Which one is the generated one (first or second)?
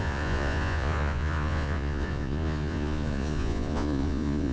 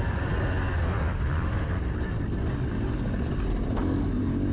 first